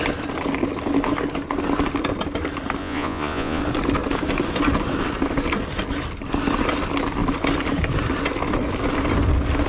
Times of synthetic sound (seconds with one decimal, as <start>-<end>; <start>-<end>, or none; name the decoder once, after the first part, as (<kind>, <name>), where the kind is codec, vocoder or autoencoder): 2.8-3.6 (vocoder, Vocos)